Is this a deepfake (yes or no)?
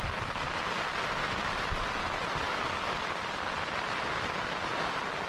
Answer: no